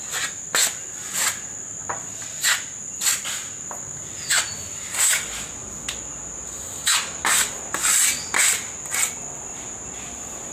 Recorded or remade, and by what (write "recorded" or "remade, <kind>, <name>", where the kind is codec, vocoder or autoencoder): recorded